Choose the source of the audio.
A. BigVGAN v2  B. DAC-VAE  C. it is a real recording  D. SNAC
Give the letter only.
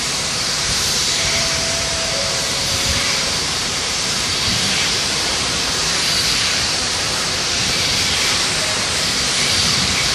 A